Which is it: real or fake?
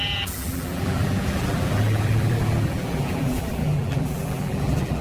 fake